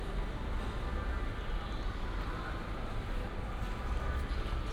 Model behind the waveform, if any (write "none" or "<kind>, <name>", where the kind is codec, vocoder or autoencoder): none